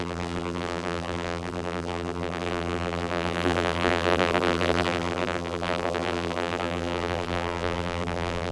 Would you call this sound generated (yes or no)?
yes